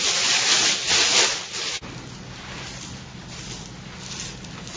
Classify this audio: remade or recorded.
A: recorded